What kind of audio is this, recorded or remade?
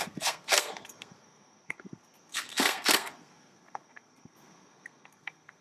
remade